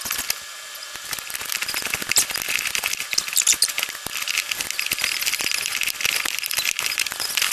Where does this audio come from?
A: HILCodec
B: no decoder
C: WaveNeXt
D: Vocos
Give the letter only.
B